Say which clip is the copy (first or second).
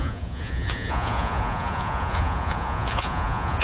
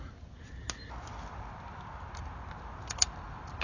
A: first